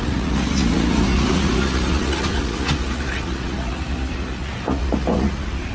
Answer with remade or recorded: remade